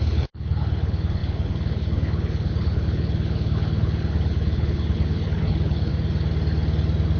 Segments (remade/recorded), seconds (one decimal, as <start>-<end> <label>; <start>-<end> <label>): 0.0-5.9 remade; 5.9-7.2 recorded